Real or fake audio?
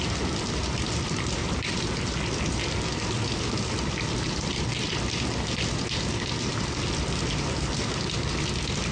real